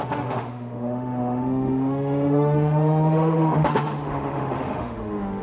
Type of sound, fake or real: fake